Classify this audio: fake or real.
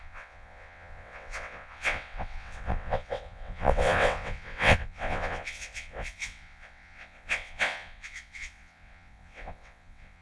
fake